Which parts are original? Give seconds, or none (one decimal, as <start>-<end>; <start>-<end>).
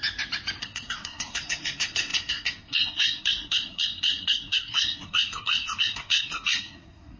0.0-0.6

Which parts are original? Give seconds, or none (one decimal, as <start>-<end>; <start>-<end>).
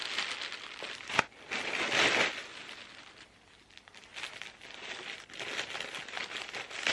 0.0-6.9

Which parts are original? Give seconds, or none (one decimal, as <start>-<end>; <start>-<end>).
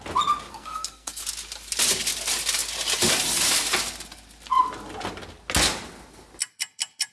0.0-0.5; 1.2-7.1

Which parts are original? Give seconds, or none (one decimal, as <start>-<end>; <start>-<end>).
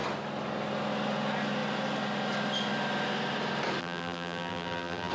0.0-3.8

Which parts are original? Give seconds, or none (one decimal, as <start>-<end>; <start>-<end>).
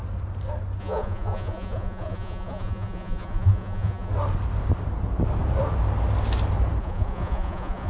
0.0-0.8; 4.1-6.8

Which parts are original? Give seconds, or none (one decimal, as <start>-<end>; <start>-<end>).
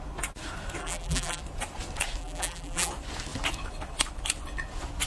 0.0-0.8; 1.4-2.2; 2.9-5.1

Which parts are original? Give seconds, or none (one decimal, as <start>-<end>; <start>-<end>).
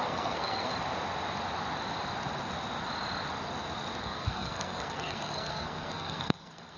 0.7-4.0